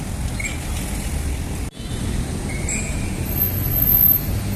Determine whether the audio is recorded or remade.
recorded